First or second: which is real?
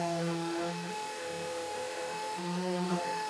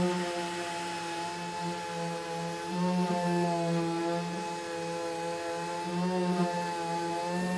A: second